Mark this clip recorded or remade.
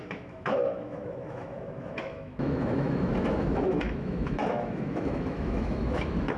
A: remade